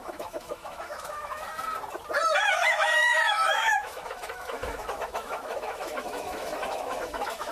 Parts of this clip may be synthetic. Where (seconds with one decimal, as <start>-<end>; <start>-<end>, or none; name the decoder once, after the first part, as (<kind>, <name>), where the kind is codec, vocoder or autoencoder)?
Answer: 0.0-1.5 (autoencoder, DAC-VAE); 2.4-7.5